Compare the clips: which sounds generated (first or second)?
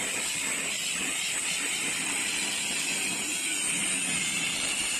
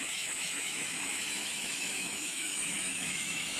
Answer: second